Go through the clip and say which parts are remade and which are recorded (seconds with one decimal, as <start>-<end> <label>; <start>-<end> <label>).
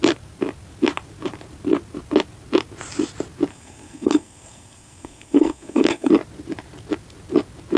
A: 0.0-3.5 recorded; 3.5-6.1 remade; 6.1-7.8 recorded